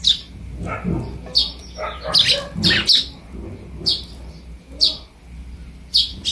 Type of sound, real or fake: real